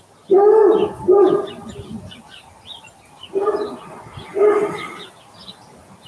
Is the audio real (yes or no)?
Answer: yes